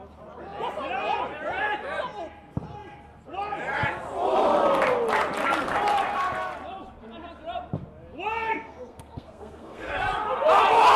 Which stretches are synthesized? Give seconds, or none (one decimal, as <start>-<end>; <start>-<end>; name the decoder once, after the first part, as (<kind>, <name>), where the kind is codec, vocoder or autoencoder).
8.5-9.9 (codec, SNAC)